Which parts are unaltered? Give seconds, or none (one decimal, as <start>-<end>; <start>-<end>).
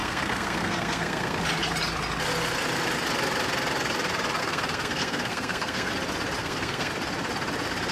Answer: 1.4-4.4; 5.9-6.4; 6.9-7.9